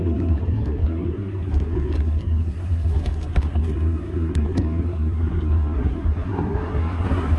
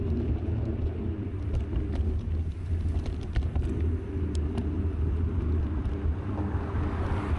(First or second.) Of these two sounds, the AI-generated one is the first